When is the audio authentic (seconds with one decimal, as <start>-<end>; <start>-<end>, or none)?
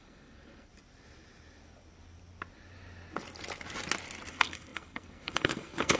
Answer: 0.7-4.3